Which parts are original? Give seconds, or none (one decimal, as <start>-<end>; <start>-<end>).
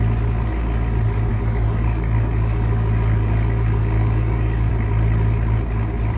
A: 0.0-1.3; 4.7-6.2